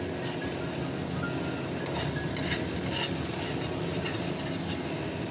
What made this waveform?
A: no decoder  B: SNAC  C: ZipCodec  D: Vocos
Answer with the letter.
A